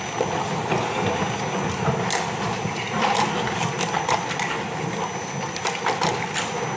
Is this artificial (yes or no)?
no